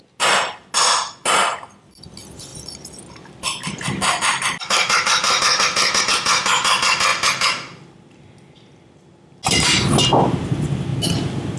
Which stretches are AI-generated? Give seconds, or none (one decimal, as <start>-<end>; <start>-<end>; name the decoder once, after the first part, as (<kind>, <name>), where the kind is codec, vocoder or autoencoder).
none

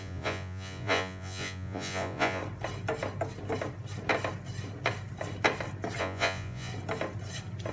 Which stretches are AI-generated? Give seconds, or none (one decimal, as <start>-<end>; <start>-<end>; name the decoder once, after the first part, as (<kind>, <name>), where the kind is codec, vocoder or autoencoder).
0.0-2.4 (vocoder, Vocos); 6.0-6.7

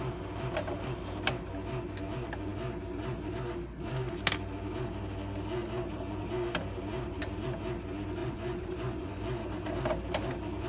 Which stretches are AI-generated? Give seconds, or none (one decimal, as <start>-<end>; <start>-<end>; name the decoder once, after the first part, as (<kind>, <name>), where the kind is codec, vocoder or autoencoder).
8.2-9.2 (vocoder, Vocos)

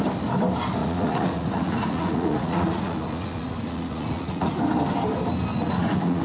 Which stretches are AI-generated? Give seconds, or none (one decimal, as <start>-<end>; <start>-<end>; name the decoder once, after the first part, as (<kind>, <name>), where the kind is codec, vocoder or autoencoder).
0.8-4.5 (vocoder, Vocos); 5.5-6.2

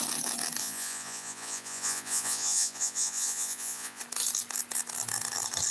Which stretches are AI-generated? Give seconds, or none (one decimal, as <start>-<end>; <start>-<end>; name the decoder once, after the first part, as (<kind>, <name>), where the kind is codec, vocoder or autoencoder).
0.6-4.0 (vocoder, Vocos)

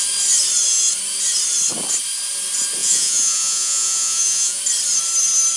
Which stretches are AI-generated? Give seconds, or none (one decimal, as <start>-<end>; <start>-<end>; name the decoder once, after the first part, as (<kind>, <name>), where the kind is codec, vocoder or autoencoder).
2.8-4.6 (vocoder, Vocos)